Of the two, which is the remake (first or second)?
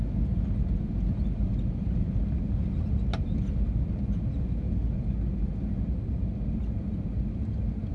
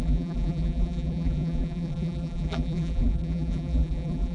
second